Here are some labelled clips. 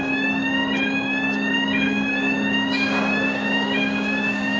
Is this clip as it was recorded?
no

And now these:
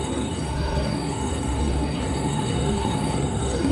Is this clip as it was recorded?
no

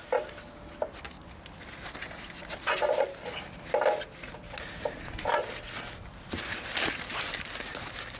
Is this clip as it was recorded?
yes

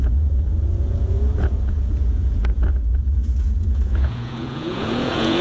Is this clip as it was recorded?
no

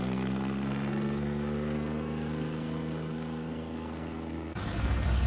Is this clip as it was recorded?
no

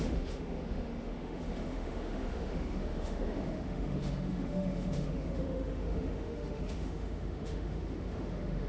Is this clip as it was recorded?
no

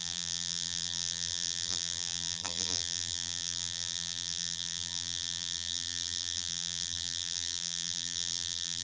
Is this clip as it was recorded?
no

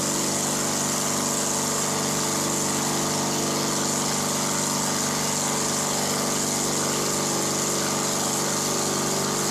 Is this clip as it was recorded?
yes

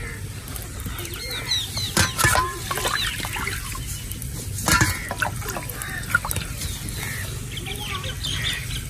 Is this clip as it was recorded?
yes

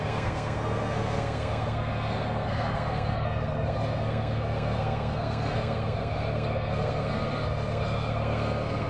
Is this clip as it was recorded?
no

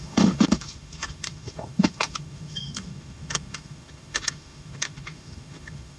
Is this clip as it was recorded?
no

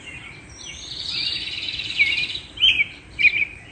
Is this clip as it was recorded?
no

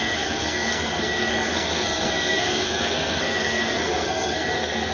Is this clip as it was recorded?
no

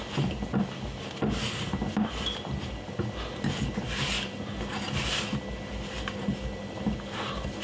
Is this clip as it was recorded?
yes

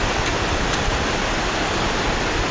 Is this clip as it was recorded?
yes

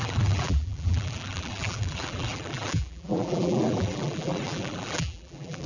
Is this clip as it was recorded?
no